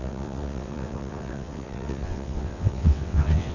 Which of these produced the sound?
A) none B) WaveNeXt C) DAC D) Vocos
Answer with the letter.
B